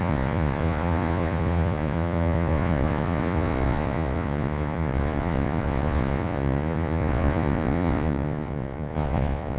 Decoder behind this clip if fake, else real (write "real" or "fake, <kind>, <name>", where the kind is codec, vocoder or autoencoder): fake, vocoder, Vocos